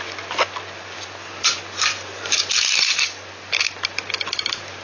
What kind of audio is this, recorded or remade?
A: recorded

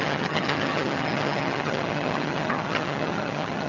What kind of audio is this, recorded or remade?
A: remade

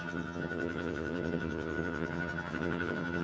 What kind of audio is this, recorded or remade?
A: remade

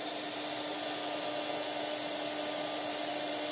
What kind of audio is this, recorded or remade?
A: recorded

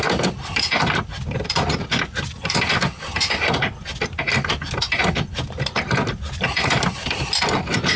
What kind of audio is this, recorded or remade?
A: recorded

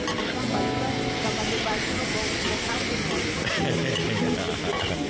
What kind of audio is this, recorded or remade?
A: recorded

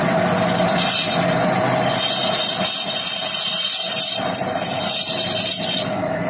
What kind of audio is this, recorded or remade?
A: recorded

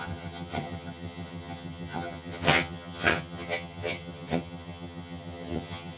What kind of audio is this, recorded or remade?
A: remade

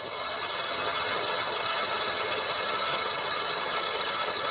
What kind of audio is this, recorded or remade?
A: remade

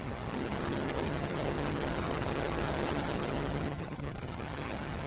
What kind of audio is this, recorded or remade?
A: remade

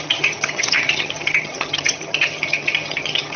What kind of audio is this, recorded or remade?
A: remade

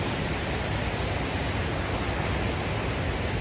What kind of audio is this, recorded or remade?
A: recorded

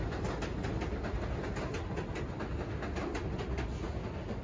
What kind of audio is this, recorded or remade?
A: recorded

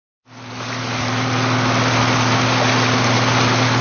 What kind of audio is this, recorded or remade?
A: recorded